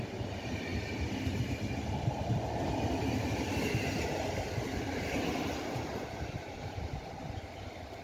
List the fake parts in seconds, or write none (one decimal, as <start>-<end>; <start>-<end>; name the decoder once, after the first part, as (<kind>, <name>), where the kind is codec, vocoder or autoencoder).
5.9-6.9 (vocoder, BigVGAN v2)